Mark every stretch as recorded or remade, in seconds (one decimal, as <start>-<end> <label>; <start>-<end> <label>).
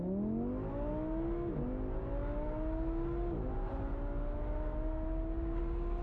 0.0-6.0 recorded